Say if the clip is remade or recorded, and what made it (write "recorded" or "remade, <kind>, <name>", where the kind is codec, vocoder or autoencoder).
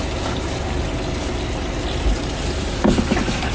recorded